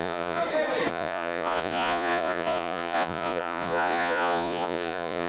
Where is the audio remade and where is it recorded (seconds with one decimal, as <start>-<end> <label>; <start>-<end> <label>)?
0.0-0.4 remade; 0.4-0.9 recorded; 0.9-5.3 remade

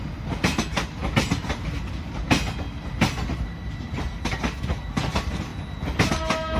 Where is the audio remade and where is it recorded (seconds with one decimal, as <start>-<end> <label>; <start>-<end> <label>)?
0.0-6.6 recorded

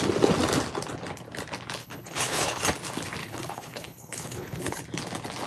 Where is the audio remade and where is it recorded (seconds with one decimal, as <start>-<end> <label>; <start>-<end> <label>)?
0.0-1.8 recorded; 1.8-2.6 remade; 2.6-3.2 recorded; 3.2-4.8 remade; 4.8-5.5 recorded

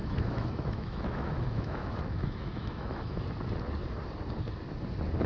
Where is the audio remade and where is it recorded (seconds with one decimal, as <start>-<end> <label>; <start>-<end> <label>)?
0.0-3.2 remade; 3.2-5.3 recorded